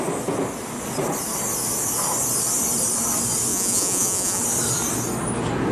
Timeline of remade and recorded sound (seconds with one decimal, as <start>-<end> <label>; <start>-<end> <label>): 0.0-3.5 recorded; 3.5-4.4 remade; 4.4-5.7 recorded